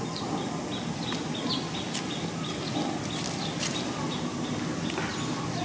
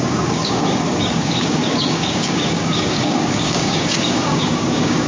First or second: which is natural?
first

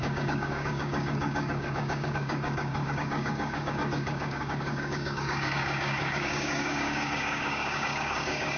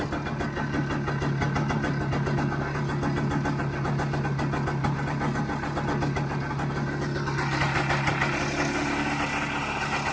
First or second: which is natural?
second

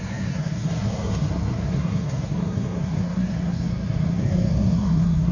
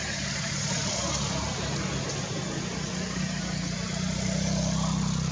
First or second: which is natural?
second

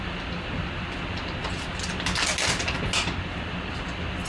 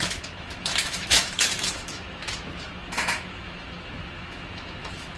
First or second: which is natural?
first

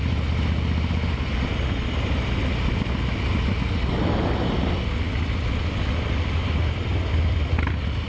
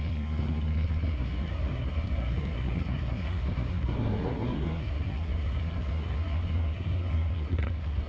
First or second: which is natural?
first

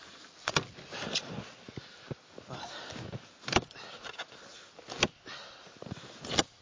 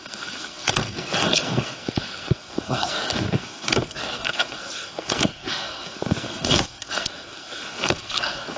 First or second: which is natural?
first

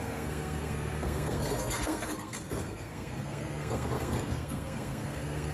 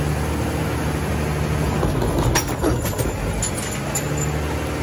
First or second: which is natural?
second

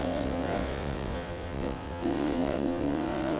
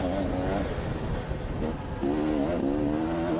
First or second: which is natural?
second